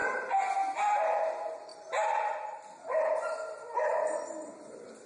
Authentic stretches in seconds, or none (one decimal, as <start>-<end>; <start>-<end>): 0.0-5.1